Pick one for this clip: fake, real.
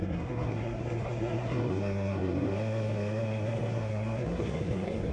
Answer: fake